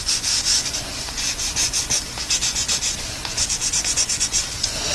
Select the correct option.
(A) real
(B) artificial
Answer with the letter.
B